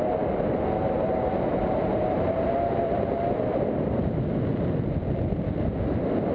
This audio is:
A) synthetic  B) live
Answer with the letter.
B